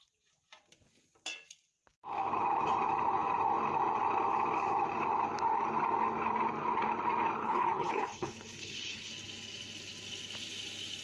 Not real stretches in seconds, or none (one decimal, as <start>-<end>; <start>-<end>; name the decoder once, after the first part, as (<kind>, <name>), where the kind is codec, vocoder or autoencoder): 7.4-9.1 (codec, HILCodec)